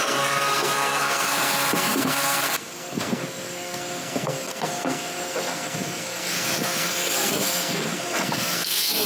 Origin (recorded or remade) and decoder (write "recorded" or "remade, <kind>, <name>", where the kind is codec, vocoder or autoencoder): remade, codec, SNAC